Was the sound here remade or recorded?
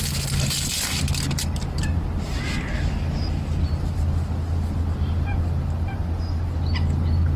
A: remade